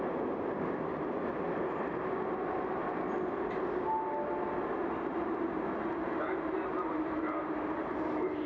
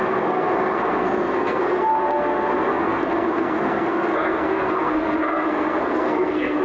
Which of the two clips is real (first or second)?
first